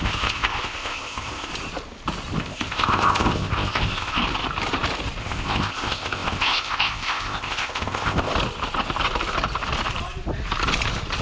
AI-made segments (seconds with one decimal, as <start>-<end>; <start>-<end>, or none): 0.0-1.5; 2.4-4.2; 5.2-8.3